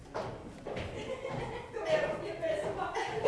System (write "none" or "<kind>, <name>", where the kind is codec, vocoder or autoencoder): none